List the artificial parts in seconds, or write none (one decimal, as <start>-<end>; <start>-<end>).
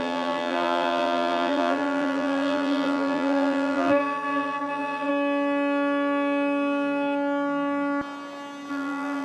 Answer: 0.0-5.1; 8.7-9.2